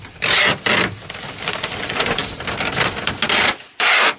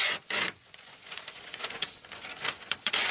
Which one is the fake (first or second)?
second